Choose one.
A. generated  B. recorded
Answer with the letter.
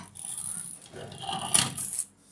B